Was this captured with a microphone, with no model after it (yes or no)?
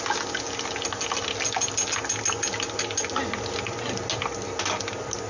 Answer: yes